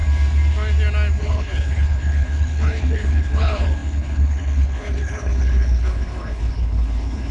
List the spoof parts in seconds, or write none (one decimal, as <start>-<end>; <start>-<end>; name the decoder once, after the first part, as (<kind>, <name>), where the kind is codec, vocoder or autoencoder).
1.2-7.3 (codec, HILCodec)